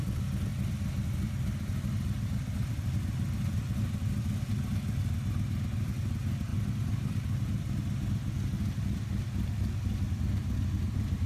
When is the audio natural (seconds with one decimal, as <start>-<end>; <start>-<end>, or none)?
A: 0.0-11.3